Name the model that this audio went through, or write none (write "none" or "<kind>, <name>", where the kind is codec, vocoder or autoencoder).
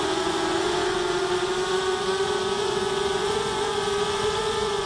vocoder, Vocos